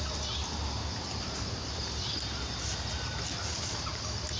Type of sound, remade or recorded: recorded